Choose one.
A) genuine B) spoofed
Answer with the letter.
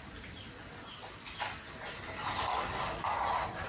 A